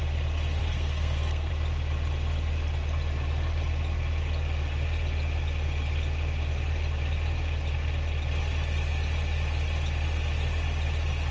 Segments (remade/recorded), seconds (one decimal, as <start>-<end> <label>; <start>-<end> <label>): 0.0-0.6 recorded; 0.6-1.5 remade; 1.5-11.3 recorded